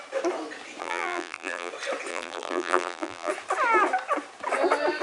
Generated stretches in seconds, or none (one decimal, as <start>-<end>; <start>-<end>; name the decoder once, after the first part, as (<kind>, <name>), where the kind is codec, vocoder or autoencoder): 0.8-1.7 (vocoder, BigVGAN v2); 2.1-3.3